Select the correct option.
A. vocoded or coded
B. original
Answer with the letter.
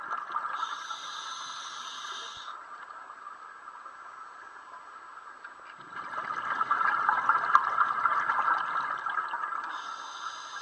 B